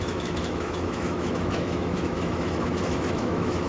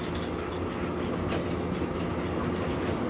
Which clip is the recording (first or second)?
second